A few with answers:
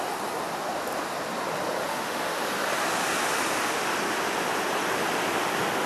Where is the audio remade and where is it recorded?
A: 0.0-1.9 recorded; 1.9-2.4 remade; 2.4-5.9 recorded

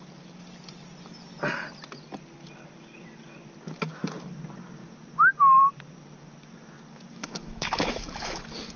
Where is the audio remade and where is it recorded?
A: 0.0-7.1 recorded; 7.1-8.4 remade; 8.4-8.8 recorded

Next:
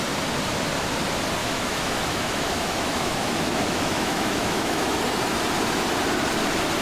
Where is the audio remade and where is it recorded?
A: 0.0-1.4 recorded; 1.4-4.9 remade; 4.9-6.8 recorded

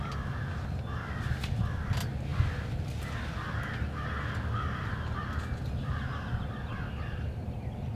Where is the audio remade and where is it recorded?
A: 0.0-8.0 recorded